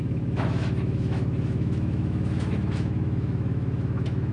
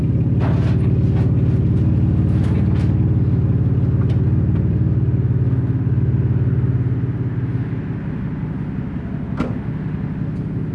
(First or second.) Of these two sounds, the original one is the second